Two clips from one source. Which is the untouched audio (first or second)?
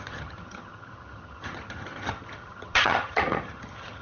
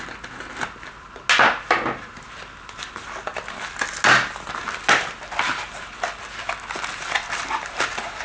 second